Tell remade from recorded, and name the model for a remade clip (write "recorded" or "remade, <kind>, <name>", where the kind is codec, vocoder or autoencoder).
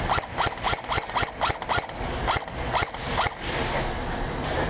recorded